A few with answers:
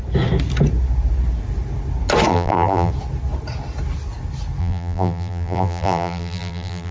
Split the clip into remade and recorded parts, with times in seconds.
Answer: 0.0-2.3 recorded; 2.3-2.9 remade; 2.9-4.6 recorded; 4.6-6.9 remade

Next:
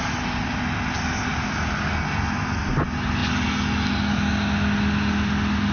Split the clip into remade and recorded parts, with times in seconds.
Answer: 0.0-5.7 recorded

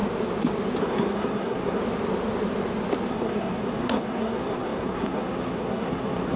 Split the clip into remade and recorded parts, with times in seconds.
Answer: 0.0-0.8 recorded; 0.8-1.8 remade; 1.8-3.1 recorded; 3.1-6.4 remade

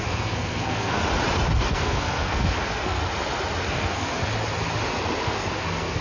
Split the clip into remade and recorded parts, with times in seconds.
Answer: 0.0-1.0 remade; 1.0-1.7 recorded; 1.7-3.0 remade; 3.0-3.7 recorded; 3.7-4.2 remade; 4.2-5.2 recorded; 5.2-6.0 remade

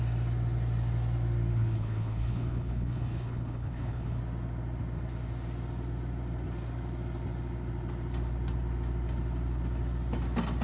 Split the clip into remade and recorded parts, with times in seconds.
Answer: 0.0-1.5 recorded; 1.5-4.2 remade; 4.2-10.6 recorded

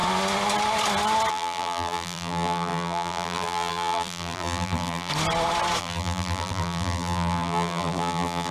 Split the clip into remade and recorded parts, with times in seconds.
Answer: 0.0-1.3 recorded; 1.3-5.1 remade; 5.1-5.8 recorded; 5.8-8.5 remade

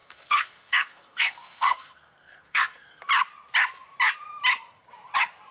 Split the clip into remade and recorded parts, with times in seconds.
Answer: 0.0-3.0 remade; 3.0-5.5 recorded

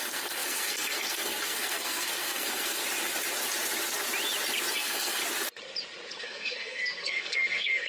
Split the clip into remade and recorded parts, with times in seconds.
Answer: 0.0-2.8 remade; 2.8-4.7 recorded; 4.7-5.2 remade; 5.2-6.2 recorded; 6.2-7.9 remade